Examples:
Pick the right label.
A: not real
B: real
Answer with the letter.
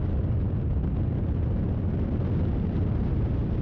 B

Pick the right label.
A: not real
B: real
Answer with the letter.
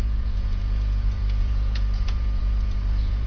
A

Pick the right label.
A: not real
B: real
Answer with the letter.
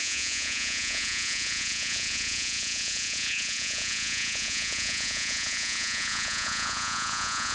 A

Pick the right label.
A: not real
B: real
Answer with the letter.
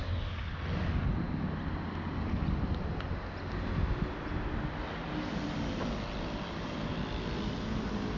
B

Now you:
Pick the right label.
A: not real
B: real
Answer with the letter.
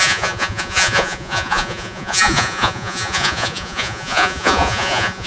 A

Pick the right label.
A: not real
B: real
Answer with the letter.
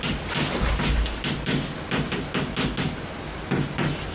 B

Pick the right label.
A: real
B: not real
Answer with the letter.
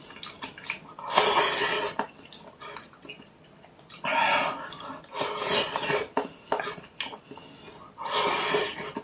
A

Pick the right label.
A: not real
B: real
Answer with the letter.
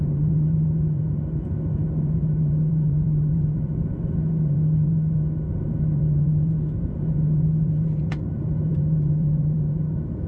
A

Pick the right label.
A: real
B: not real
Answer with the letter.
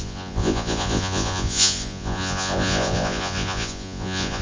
B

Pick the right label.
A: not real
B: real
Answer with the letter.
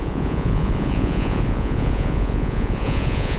A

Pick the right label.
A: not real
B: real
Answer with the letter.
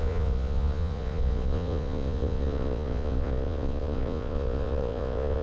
A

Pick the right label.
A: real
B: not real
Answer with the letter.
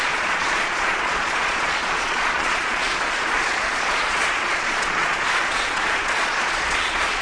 B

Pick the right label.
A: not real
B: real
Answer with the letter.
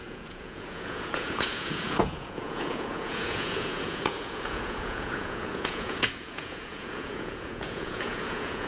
A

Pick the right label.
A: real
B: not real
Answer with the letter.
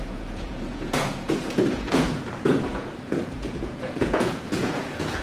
B